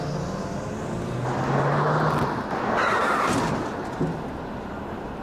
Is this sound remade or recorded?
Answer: recorded